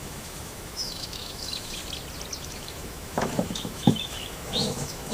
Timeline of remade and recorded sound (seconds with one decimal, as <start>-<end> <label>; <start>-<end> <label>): 0.0-1.8 remade; 1.8-2.4 recorded; 2.4-5.1 remade